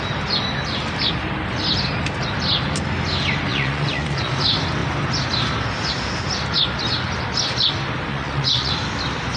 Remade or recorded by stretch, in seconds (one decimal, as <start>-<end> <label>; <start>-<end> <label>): 0.0-3.5 recorded; 3.5-4.3 remade; 4.3-8.1 recorded; 8.1-8.7 remade; 8.7-9.4 recorded